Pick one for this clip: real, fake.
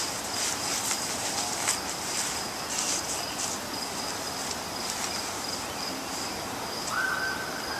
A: real